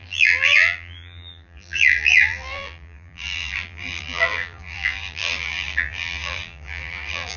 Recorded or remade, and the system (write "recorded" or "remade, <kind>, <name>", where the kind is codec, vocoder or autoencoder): remade, vocoder, BigVGAN v2